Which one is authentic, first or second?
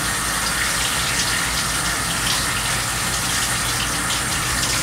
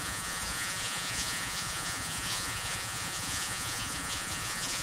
first